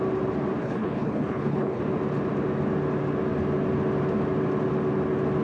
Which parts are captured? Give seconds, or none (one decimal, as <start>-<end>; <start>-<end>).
0.0-0.6; 1.8-5.4